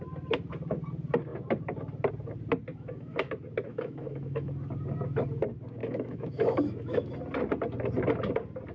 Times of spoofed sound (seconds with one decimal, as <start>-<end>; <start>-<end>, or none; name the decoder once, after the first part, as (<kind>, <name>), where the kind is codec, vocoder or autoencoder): 2.7-3.3 (autoencoder, DAC-VAE); 3.7-4.5; 5.8-7.1